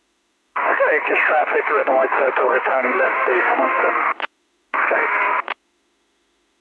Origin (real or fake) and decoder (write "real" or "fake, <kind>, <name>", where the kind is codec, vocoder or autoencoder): fake, autoencoder, DAC-VAE